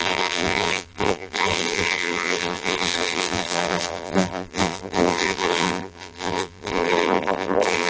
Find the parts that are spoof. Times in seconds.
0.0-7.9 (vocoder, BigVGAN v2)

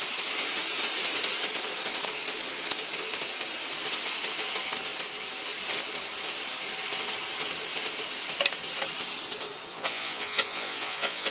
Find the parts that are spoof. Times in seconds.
9.7-11.3 (vocoder, Vocos)

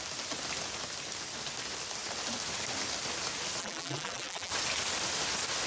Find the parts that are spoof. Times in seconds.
3.6-4.5 (vocoder, BigVGAN v2)

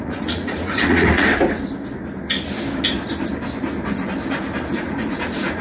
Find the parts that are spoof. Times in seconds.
0.0-1.3 (vocoder, Vocos); 4.7-5.6

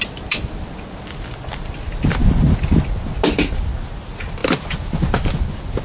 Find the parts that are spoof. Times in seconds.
none

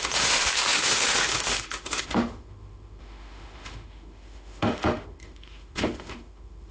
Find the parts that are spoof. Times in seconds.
0.0-6.7 (autoencoder, DAC-VAE)